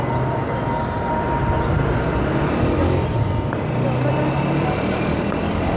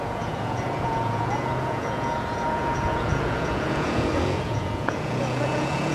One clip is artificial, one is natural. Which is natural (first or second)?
first